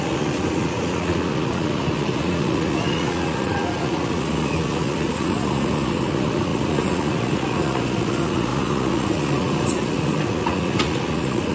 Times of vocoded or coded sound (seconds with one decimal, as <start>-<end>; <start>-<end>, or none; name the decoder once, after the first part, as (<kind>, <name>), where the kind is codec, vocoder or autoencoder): 0.0-11.5 (vocoder, Vocos)